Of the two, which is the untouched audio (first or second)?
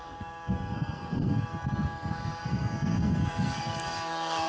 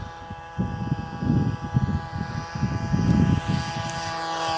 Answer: second